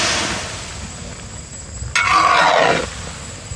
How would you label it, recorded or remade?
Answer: recorded